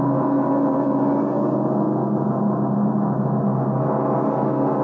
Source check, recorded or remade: recorded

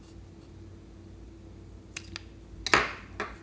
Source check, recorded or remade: recorded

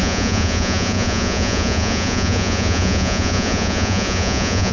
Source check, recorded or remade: remade